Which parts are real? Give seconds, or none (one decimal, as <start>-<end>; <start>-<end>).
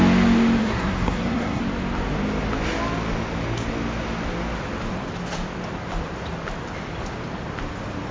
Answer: 0.0-0.6; 1.6-8.1